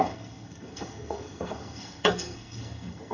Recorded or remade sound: remade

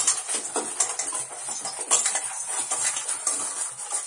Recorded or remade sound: recorded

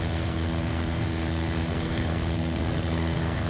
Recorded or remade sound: remade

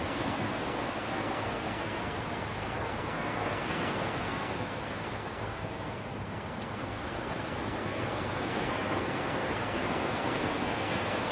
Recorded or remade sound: remade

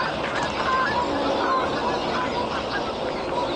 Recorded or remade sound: recorded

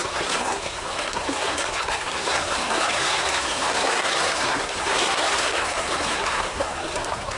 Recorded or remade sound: remade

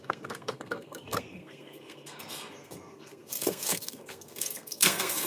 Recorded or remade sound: remade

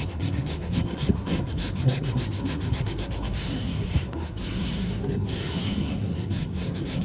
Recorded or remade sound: remade